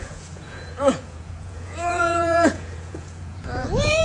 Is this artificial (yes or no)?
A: yes